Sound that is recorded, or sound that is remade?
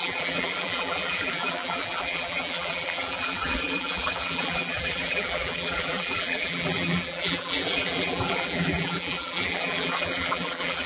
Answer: remade